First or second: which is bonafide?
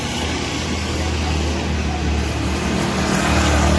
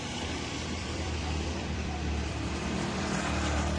first